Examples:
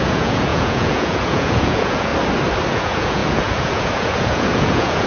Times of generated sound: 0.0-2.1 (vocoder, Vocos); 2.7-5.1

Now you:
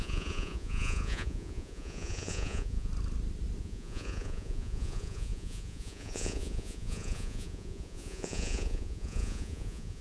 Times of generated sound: 0.0-2.9 (vocoder, Vocos); 3.6-10.0